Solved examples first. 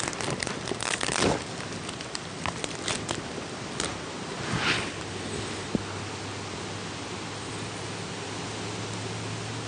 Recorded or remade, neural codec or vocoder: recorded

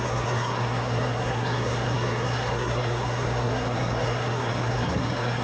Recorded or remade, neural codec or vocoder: remade, codec, SNAC